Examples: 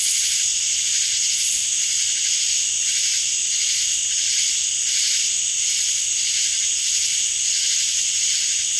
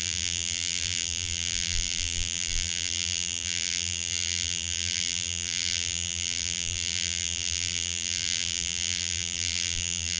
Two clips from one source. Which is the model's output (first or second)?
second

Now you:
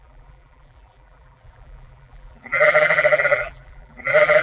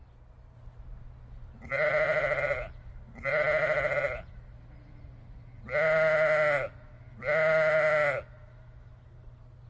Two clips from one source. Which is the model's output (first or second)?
first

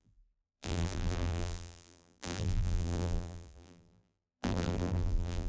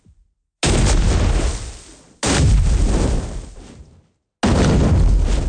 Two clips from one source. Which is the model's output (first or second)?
first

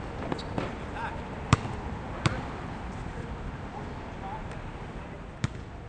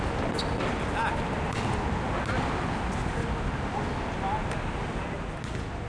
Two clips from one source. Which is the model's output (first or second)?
first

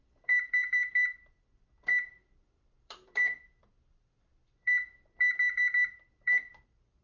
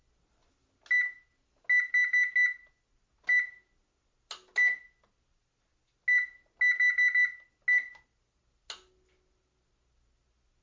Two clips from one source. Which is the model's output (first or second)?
first